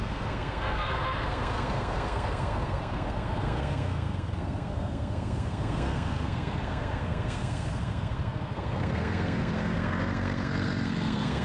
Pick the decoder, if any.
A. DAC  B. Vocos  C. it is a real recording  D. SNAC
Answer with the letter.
D